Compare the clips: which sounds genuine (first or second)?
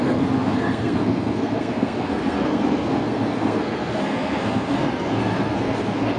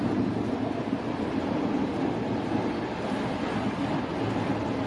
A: second